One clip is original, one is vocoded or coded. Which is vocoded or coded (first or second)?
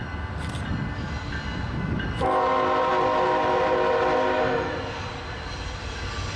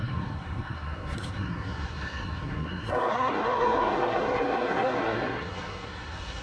second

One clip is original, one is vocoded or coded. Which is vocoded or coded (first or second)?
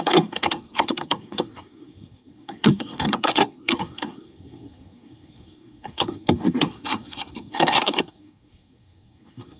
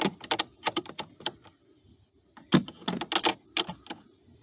first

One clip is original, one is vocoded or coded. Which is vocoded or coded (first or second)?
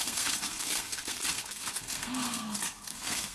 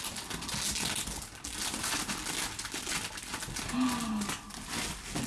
first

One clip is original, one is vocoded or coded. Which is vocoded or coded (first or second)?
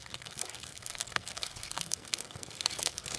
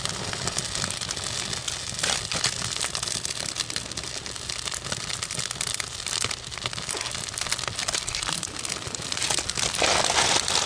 first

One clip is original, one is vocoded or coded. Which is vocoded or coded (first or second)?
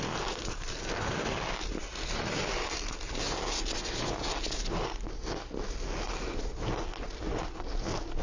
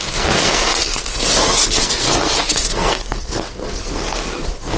second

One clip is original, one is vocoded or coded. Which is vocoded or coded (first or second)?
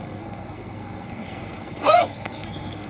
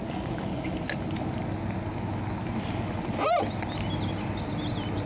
first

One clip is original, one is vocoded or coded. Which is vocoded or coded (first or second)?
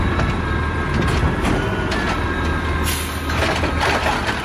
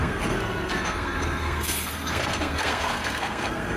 second